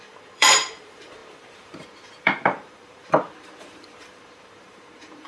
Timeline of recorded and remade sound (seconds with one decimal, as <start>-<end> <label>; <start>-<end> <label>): 0.0-5.3 remade

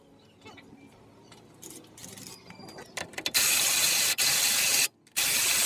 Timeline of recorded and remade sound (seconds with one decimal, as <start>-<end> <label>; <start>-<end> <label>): 0.0-5.7 recorded